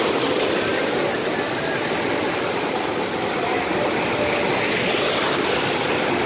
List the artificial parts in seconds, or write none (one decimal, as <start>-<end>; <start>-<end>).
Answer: 0.7-1.3; 2.2-3.1